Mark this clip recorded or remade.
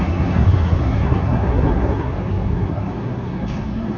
remade